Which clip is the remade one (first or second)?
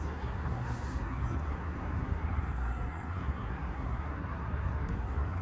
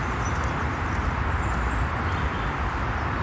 first